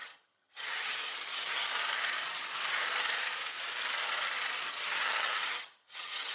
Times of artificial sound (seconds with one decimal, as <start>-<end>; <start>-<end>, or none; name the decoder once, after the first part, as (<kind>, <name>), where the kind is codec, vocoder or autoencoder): 0.0-1.7 (vocoder, HiFi-GAN); 4.7-6.3